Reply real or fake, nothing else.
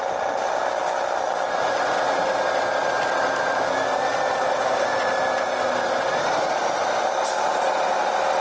real